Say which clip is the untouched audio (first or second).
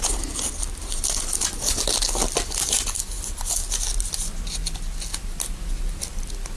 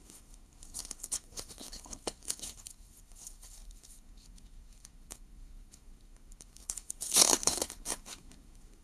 first